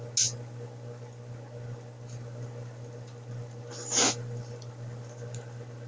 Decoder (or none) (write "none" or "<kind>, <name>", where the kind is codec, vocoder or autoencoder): none